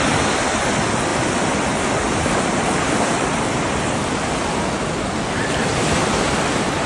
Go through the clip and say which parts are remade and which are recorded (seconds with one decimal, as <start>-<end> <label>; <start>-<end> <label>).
0.0-1.1 recorded; 1.1-5.0 remade; 5.0-5.7 recorded; 5.7-6.3 remade; 6.3-6.9 recorded